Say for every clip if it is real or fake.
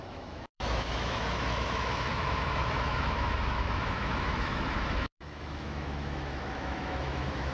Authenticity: fake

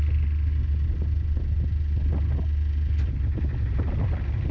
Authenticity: real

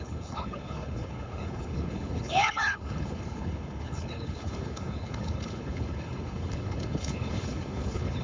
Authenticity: fake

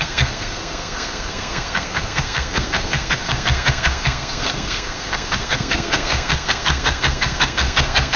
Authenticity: fake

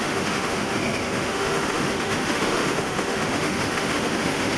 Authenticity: fake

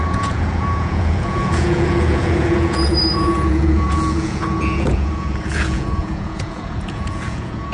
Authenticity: fake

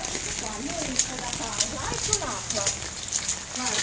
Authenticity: real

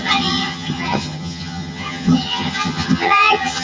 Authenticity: fake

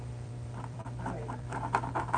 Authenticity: fake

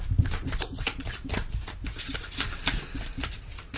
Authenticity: real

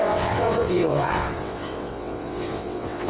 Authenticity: fake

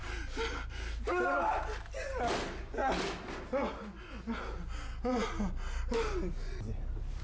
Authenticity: real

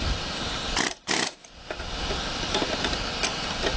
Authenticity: fake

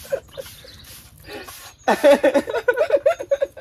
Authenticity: real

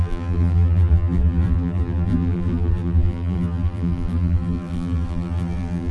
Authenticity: fake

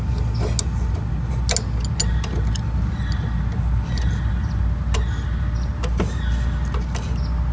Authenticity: real